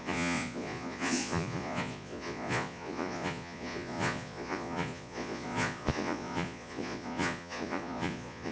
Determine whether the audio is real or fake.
fake